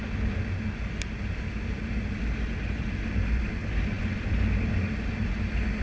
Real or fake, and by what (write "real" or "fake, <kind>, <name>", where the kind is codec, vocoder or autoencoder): real